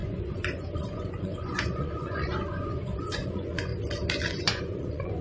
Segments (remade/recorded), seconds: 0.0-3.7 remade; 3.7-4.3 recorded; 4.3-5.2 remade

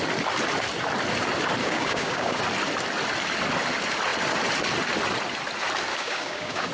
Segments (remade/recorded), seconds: 0.0-1.6 recorded; 1.6-2.4 remade; 2.4-5.9 recorded; 5.9-6.7 remade

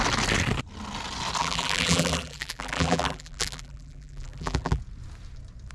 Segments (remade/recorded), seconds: 0.0-1.4 recorded; 1.4-4.8 remade; 4.8-5.7 recorded

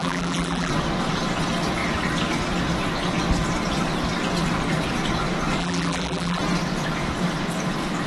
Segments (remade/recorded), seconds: 0.0-0.7 remade; 0.7-5.6 recorded; 5.6-6.4 remade; 6.4-8.1 recorded